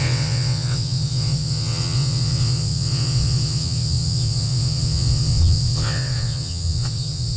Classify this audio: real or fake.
fake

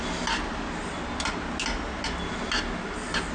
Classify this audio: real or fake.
real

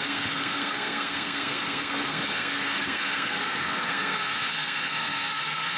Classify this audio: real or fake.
fake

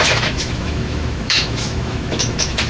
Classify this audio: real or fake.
fake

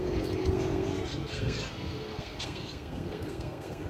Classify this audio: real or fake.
fake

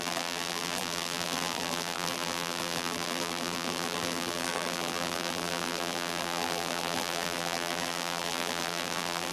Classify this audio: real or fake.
fake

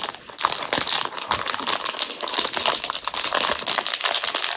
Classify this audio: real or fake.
real